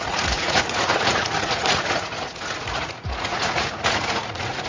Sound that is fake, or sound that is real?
fake